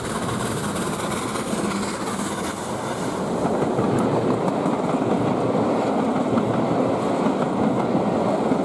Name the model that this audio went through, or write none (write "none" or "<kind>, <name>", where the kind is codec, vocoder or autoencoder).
none